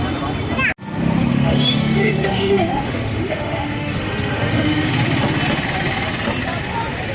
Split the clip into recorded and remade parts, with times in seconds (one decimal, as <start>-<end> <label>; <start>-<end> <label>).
0.0-1.3 recorded; 1.3-4.9 remade; 4.9-7.1 recorded